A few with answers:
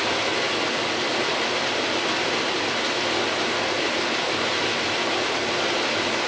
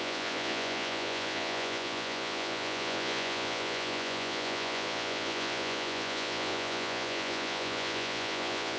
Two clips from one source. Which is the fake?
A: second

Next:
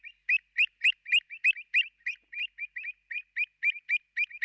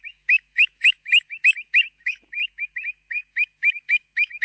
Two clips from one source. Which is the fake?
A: second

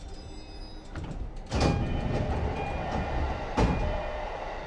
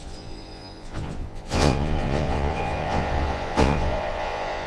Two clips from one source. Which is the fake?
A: second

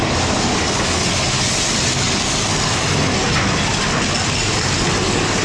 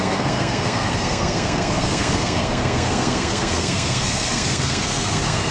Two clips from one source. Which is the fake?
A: second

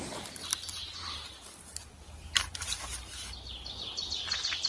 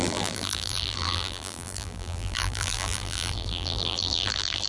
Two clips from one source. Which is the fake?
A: second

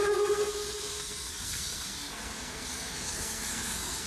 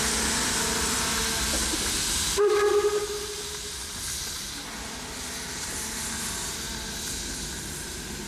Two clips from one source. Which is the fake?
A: first